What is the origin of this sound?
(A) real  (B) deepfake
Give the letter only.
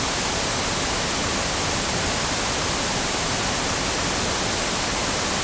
A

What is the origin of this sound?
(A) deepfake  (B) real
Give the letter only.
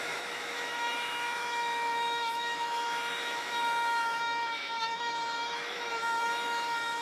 A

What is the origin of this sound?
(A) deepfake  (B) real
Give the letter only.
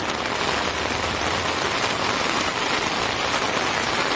B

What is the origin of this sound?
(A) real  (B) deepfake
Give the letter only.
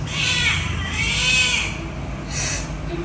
A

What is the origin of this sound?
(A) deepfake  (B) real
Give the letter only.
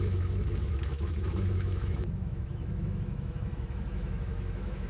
A